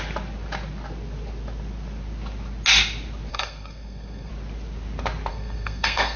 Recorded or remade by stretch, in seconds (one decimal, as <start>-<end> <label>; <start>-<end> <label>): 0.0-3.3 recorded; 3.3-4.3 remade; 4.3-5.3 recorded; 5.3-6.2 remade